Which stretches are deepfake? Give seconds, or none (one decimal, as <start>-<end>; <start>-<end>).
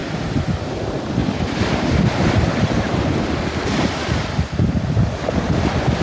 0.0-6.0